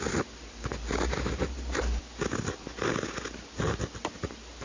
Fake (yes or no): no